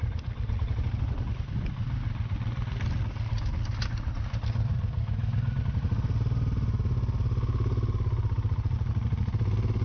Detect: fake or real real